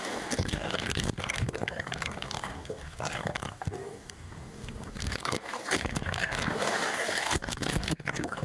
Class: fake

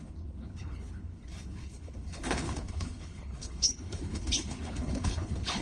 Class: fake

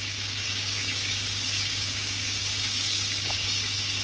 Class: fake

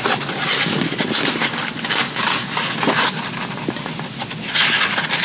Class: real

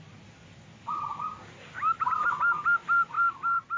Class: real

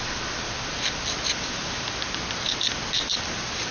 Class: real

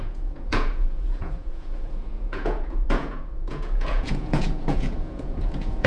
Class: fake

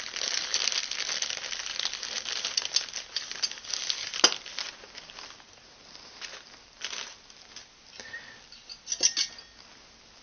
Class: real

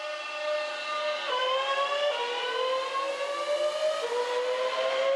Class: real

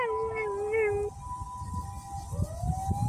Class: real